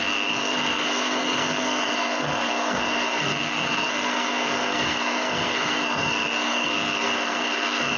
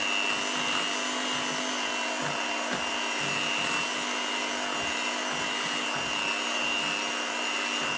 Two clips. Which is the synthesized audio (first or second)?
first